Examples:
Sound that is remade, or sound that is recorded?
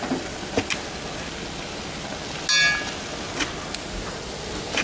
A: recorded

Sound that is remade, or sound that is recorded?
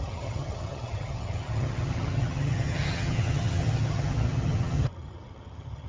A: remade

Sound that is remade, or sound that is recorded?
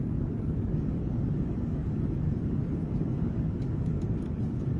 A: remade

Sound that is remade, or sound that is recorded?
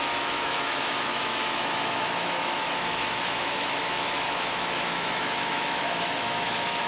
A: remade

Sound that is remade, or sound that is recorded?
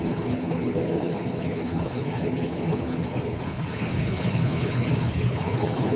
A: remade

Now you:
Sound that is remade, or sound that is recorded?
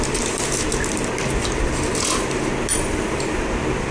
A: recorded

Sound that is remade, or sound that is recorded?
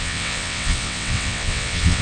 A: remade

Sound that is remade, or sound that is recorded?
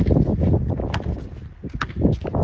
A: recorded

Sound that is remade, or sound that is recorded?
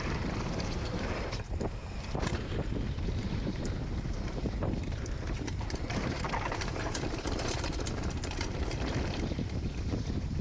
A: remade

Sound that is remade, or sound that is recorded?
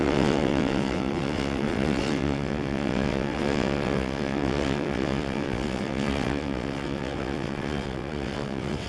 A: remade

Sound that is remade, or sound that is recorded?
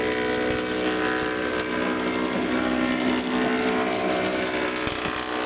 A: recorded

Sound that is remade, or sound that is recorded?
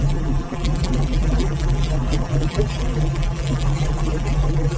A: remade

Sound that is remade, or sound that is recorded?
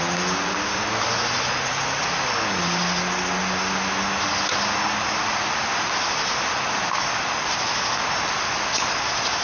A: recorded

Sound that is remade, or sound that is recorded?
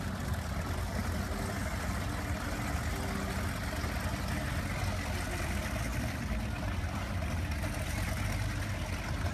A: recorded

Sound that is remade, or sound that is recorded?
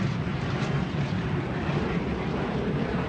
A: remade